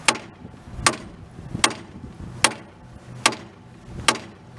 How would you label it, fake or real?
real